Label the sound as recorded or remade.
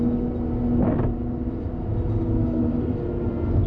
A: recorded